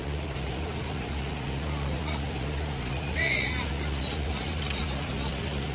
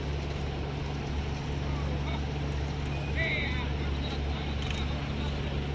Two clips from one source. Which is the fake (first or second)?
first